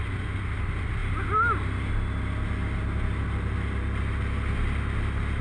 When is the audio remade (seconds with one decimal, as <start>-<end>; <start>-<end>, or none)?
none